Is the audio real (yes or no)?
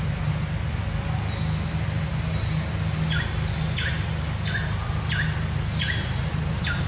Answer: yes